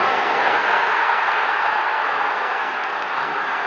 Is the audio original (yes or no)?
no